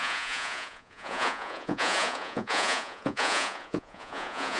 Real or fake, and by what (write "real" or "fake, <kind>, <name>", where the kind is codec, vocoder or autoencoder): fake, vocoder, Vocos